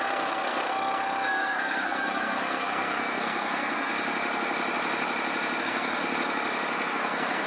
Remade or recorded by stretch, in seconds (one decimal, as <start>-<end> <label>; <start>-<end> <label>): 0.0-3.9 remade; 3.9-5.6 recorded; 5.6-6.0 remade; 6.0-6.9 recorded; 6.9-7.5 remade